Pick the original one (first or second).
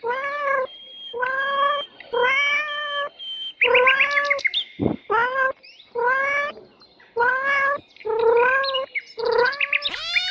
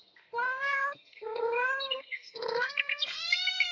first